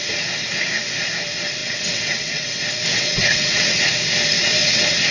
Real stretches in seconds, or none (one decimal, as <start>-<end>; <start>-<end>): 0.0-1.6; 2.5-2.9; 3.8-4.6